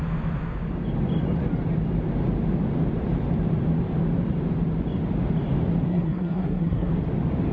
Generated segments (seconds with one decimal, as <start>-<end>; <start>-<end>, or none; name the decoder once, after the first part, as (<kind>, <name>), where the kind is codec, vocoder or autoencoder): 5.9-6.9 (codec, SNAC)